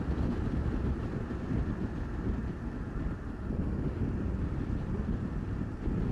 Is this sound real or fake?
fake